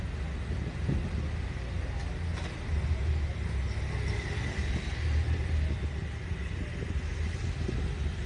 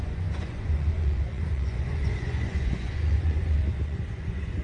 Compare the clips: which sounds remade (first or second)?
second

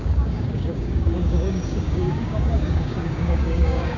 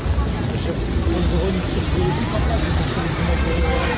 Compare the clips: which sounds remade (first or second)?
first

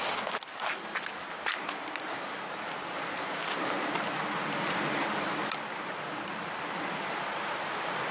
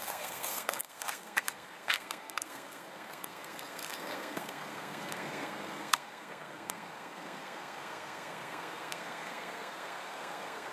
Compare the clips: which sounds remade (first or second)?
second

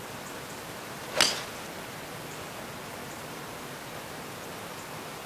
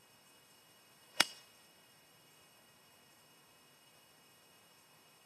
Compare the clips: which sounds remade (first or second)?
second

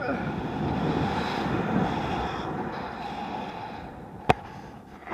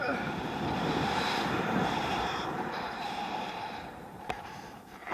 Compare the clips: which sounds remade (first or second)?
second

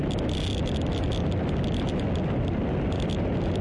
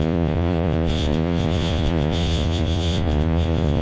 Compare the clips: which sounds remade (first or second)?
second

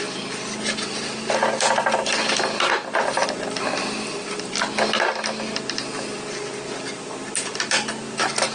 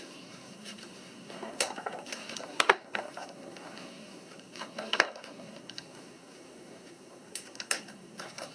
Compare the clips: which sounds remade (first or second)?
second